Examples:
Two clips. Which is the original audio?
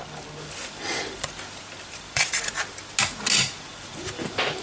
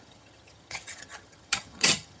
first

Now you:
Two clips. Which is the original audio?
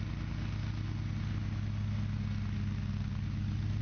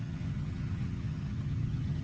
first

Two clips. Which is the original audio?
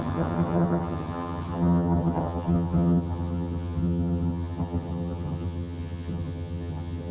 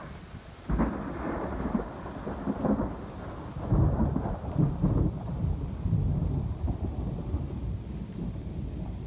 second